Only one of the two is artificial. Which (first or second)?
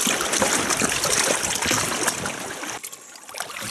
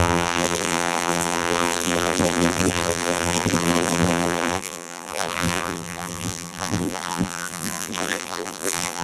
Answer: second